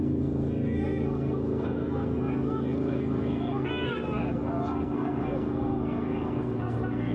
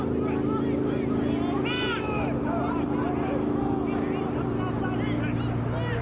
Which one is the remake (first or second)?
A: first